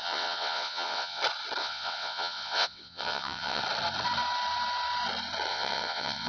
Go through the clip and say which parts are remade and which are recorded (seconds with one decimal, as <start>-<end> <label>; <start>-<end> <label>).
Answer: 0.0-1.2 remade; 1.2-1.6 recorded; 1.6-3.6 remade; 3.6-5.5 recorded; 5.5-6.3 remade